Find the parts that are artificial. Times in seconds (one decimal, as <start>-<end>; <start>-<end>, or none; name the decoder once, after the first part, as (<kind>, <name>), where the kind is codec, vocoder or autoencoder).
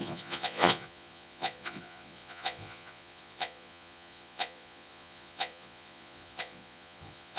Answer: 0.0-7.4 (vocoder, Vocos)